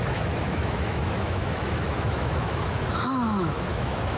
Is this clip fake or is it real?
fake